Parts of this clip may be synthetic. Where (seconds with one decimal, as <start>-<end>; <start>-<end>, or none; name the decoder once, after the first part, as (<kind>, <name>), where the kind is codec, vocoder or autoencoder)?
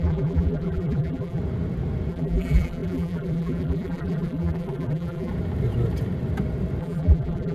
0.0-1.4 (vocoder, BigVGAN v2); 2.1-5.3; 6.8-7.5